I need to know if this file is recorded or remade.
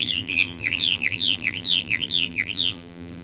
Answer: remade